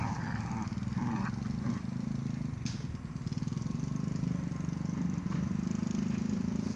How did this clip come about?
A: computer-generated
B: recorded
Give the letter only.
B